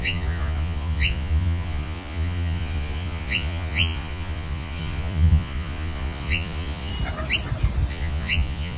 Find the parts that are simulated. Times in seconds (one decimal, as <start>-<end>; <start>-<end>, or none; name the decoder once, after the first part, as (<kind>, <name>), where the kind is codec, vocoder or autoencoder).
0.0-6.9 (vocoder, Vocos); 7.9-8.8